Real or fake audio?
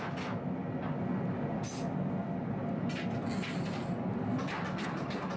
real